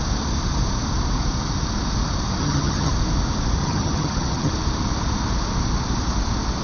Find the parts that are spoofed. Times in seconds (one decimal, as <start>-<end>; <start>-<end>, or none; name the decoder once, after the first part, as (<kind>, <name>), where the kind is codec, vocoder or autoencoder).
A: 2.4-2.9 (vocoder, HiFi-GAN); 3.6-4.5